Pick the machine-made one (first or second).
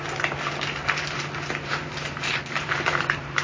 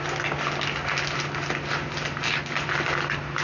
first